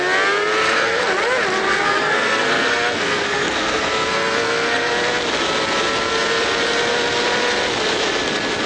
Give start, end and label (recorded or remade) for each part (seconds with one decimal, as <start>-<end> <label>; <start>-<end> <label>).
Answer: 0.0-0.6 recorded; 0.6-1.1 remade; 1.1-1.6 recorded; 1.6-4.9 remade; 4.9-8.7 recorded